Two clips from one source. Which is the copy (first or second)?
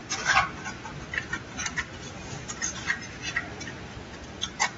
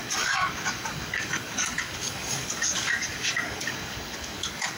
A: second